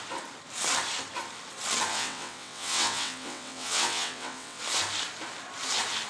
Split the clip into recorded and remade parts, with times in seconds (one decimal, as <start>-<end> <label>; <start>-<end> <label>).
0.0-1.9 recorded; 1.9-4.6 remade; 4.6-6.1 recorded